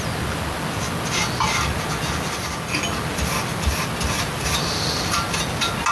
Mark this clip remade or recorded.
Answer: recorded